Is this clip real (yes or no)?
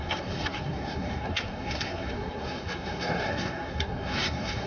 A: no